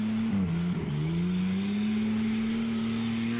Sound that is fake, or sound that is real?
real